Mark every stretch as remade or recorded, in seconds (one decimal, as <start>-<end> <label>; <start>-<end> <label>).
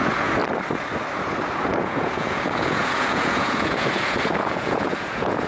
0.0-0.4 remade; 0.4-1.6 recorded; 1.6-5.5 remade